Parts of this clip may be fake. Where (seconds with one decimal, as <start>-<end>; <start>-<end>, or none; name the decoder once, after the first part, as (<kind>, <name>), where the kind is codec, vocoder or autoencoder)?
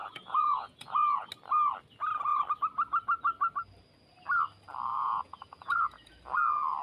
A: 0.0-1.3 (vocoder, Vocos); 4.9-6.1